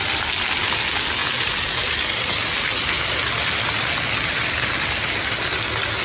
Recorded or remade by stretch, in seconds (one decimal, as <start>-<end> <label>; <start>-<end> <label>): 0.0-6.0 recorded